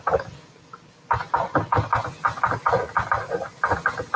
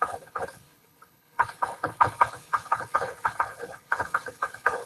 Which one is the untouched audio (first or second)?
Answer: first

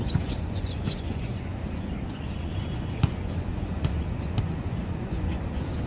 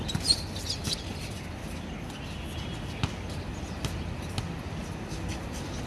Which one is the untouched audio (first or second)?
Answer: second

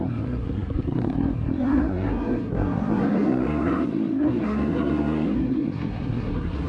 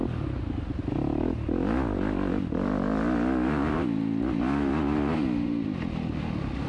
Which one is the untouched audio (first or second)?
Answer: second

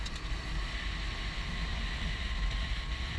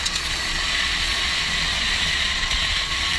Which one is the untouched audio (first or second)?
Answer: first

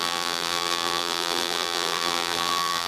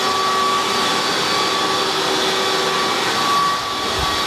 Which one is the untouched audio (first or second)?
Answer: second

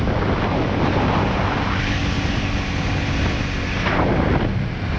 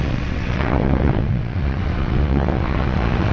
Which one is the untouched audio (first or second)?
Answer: first